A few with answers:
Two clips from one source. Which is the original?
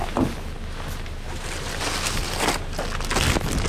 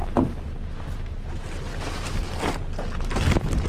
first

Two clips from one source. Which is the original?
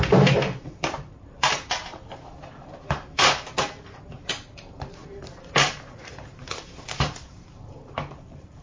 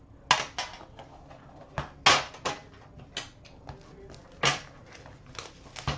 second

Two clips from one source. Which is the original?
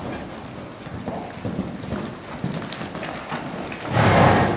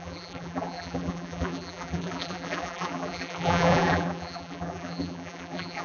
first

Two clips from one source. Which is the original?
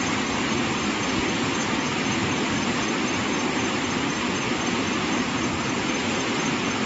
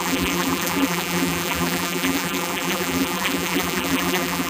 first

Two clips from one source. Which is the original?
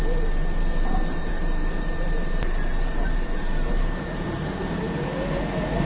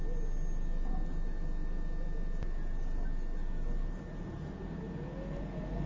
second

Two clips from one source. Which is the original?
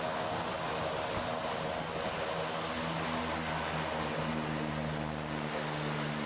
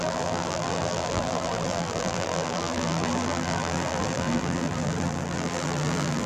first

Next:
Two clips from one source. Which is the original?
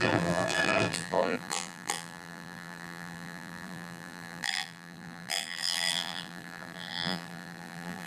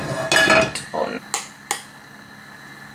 second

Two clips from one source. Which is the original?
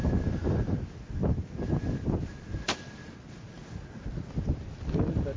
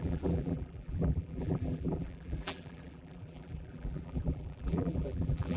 first